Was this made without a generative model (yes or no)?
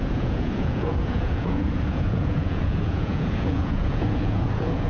no